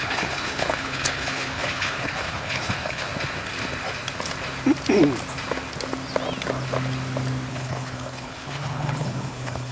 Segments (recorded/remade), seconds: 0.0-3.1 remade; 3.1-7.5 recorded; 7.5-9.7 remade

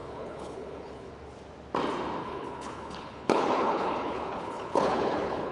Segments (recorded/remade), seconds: 0.0-1.1 remade; 1.1-2.2 recorded; 2.2-5.5 remade